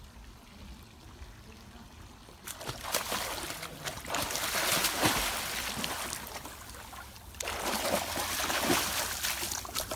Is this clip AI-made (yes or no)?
no